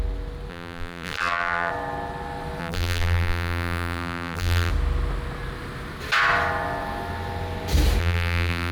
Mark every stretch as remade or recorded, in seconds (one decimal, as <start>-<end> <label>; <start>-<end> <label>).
0.0-0.5 recorded; 0.5-1.7 remade; 1.7-2.6 recorded; 2.6-4.7 remade; 4.7-8.0 recorded; 8.0-8.7 remade